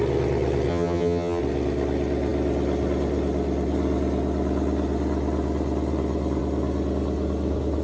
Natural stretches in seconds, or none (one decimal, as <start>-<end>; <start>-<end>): 0.0-0.7; 1.4-7.8